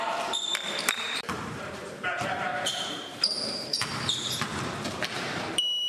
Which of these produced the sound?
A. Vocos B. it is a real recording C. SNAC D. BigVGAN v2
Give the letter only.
D